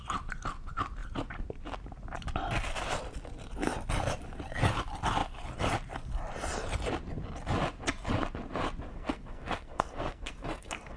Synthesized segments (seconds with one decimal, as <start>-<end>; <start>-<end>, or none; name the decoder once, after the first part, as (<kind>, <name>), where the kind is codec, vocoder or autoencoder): 8.9-11.0 (codec, SNAC)